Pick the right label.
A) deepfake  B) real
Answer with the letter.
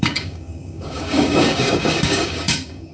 A